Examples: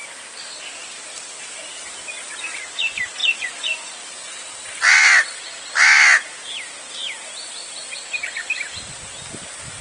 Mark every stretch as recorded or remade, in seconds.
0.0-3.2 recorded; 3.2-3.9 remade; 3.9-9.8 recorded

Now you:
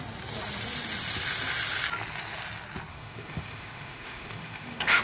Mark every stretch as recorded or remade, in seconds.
0.0-2.9 recorded; 2.9-5.0 remade

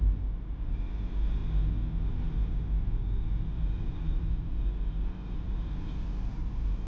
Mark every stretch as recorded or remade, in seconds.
0.0-1.4 remade; 1.4-3.9 recorded; 3.9-4.5 remade; 4.5-6.4 recorded; 6.4-6.9 remade